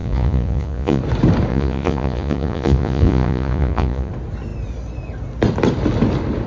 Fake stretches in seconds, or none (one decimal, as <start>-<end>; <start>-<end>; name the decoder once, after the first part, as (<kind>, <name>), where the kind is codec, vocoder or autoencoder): 0.0-1.0 (vocoder, Vocos); 1.5-4.1